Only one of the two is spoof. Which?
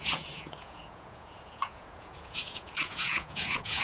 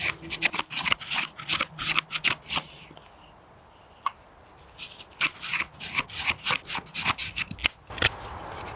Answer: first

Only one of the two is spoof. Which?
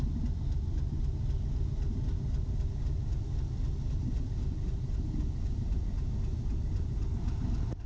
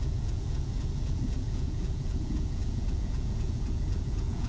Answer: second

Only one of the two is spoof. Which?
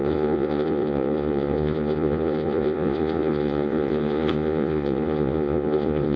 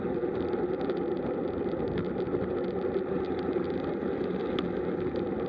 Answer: first